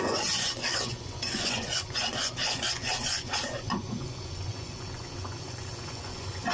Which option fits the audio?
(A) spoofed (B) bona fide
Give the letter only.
A